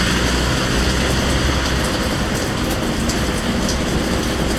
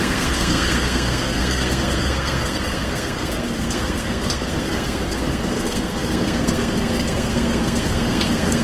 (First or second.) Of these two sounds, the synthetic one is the second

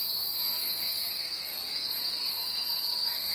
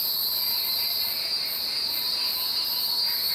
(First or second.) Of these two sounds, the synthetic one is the first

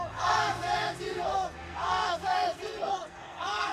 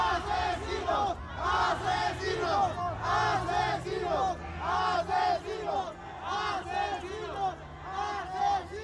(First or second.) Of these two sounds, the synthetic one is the first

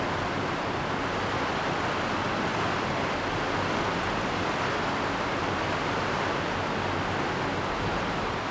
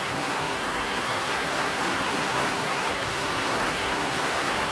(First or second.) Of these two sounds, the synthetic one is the second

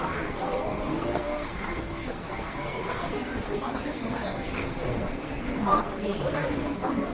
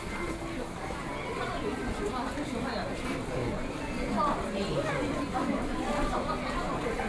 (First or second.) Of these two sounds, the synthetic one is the first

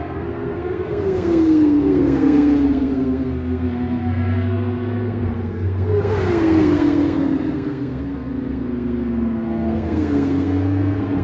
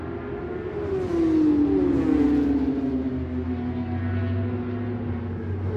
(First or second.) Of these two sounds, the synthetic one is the first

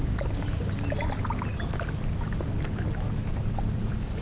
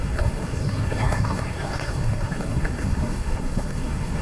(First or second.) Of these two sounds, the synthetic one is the second